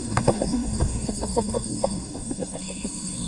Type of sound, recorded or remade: remade